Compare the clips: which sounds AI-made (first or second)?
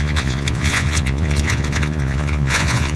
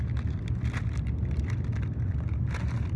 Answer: first